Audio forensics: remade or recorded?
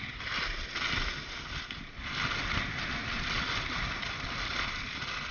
recorded